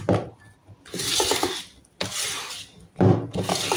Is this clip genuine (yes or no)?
yes